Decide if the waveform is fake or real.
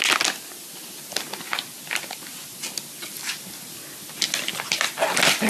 real